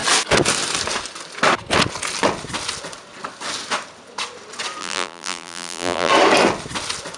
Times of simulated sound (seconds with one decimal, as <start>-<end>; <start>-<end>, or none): 4.8-6.1